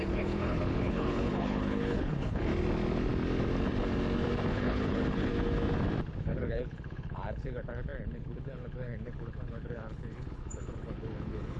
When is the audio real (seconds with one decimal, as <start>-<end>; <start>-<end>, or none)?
2.5-4.5; 5.3-6.2